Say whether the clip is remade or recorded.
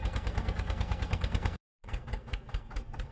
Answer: remade